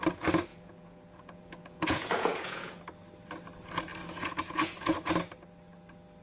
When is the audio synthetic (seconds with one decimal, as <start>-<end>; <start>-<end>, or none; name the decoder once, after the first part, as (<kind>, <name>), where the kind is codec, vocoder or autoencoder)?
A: 0.5-2.8 (vocoder, Vocos); 4.0-5.1